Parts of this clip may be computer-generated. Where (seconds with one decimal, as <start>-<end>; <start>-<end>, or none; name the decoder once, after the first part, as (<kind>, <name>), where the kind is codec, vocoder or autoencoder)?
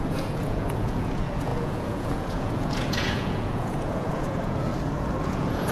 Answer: 0.0-4.7 (vocoder, Vocos); 5.2-5.7